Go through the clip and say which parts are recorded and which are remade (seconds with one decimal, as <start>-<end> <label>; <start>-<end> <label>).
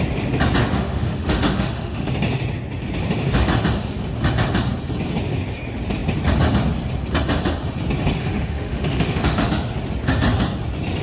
0.0-0.6 recorded; 0.6-2.1 remade; 2.1-8.2 recorded; 8.2-9.5 remade; 9.5-11.0 recorded